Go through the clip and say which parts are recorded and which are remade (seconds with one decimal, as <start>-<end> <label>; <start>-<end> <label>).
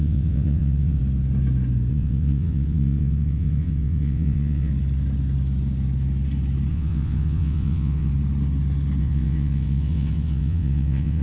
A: 0.0-1.0 remade; 1.0-1.9 recorded; 1.9-4.7 remade; 4.7-6.7 recorded; 6.7-8.1 remade; 8.1-9.0 recorded; 9.0-11.2 remade